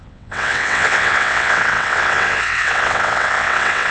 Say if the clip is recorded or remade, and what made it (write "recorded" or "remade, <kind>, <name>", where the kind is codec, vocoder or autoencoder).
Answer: remade, vocoder, WaveNeXt